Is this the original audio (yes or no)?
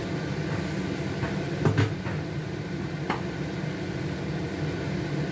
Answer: yes